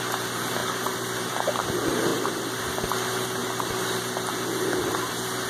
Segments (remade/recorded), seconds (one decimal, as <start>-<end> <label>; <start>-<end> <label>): 0.0-0.6 recorded; 0.6-1.3 remade; 1.3-2.1 recorded; 2.1-2.6 remade; 2.6-5.5 recorded